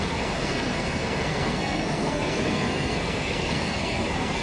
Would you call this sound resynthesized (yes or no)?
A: yes